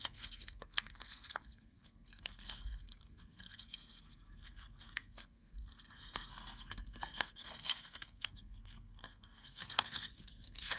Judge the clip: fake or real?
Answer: fake